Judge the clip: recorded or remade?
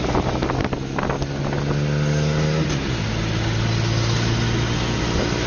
recorded